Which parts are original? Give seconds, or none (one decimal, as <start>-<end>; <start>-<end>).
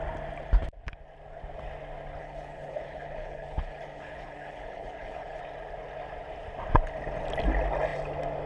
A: 0.0-2.2; 5.4-8.5